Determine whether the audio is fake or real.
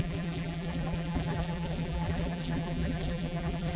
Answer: fake